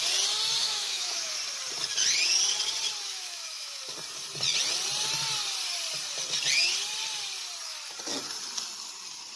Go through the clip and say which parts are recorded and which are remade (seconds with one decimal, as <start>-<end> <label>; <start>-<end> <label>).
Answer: 0.0-0.6 recorded; 0.6-1.3 remade; 1.3-3.1 recorded; 3.1-3.8 remade; 3.8-9.4 recorded